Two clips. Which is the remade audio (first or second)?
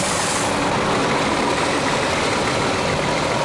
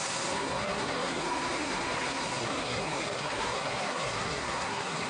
second